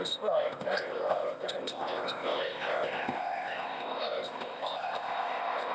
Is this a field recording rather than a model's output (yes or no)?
no